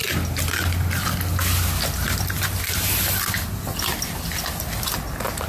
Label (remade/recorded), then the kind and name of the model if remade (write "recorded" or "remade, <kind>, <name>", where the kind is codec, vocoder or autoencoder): recorded